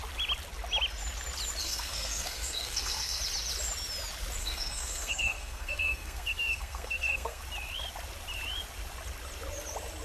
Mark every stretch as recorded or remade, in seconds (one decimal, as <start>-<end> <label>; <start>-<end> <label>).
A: 0.0-1.6 recorded; 1.6-3.2 remade; 3.2-4.4 recorded; 4.4-7.4 remade; 7.4-10.0 recorded